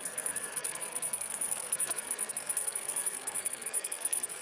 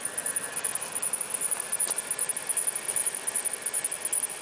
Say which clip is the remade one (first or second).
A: first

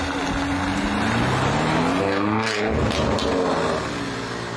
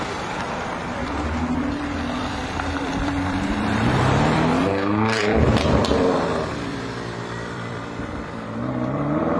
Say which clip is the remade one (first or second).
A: second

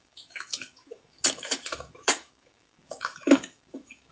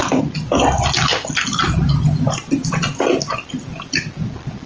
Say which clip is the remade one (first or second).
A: first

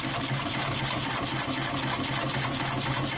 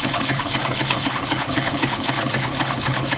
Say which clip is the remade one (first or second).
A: second